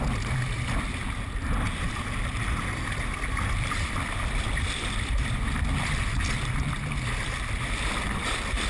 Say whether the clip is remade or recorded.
recorded